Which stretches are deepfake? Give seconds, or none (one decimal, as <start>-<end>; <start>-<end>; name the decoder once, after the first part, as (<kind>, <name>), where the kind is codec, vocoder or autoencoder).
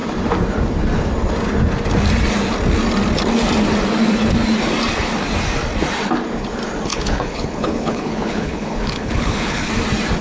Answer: 6.9-9.7 (codec, HILCodec)